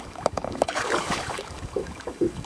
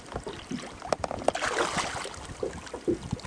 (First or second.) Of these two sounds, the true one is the second